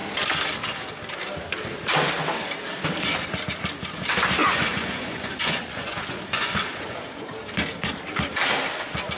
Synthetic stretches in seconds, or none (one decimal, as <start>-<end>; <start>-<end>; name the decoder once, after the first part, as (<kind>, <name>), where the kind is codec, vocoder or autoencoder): 4.4-7.3 (vocoder, Vocos)